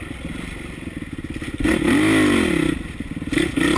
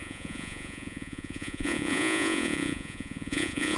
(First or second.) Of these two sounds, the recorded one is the first